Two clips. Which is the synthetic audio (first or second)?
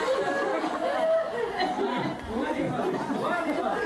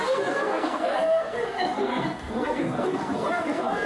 second